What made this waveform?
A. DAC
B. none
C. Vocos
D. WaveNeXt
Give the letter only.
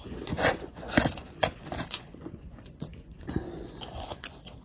C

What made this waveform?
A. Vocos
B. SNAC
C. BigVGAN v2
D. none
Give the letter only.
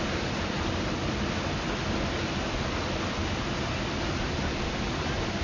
D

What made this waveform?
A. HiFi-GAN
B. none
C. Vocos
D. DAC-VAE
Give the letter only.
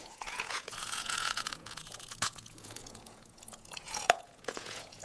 C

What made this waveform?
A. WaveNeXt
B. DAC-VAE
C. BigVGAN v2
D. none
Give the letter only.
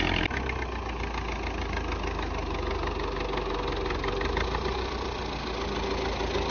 D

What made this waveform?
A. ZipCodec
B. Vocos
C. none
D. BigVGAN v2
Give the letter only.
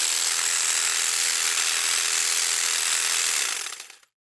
C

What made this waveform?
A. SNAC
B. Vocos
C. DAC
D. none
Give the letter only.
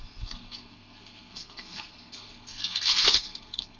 A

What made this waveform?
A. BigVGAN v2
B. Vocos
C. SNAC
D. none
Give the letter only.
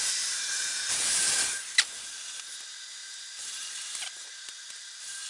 D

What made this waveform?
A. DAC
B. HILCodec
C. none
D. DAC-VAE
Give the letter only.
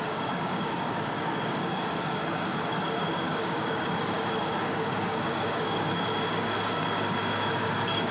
A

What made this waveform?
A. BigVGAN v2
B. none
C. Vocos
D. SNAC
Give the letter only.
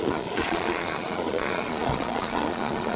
C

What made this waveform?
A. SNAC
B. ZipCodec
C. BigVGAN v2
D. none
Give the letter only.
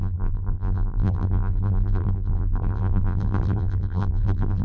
C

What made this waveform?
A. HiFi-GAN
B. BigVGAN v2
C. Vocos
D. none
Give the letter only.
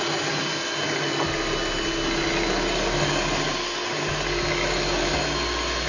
D